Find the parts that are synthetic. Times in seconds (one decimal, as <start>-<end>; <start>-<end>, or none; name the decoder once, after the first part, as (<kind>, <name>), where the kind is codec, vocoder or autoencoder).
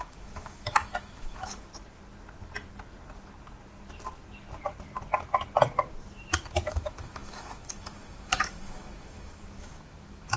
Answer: 0.0-1.7 (autoencoder, DAC-VAE); 6.7-10.4